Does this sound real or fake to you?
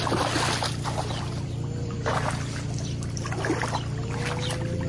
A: real